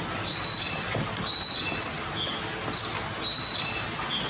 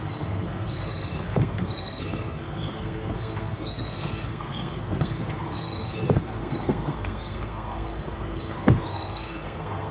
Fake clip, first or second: second